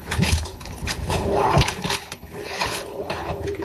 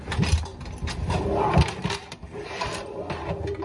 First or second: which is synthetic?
first